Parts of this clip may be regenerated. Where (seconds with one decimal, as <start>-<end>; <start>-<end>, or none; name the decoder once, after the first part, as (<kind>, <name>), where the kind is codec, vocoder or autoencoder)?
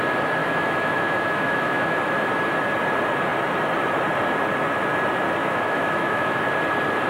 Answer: 0.4-2.0 (autoencoder, DAC-VAE); 5.4-6.4